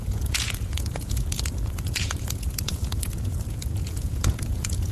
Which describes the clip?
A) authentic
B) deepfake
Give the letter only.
B